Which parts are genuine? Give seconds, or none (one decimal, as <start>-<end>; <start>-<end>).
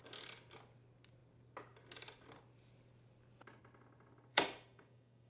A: 0.0-4.3